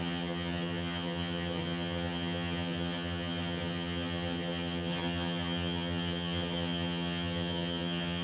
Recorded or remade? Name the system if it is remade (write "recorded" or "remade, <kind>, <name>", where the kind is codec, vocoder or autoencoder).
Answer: remade, vocoder, HiFi-GAN